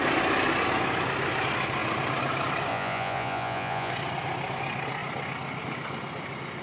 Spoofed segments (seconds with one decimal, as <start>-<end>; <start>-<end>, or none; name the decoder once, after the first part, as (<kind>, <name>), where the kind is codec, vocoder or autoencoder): 2.7-3.9 (vocoder, Vocos)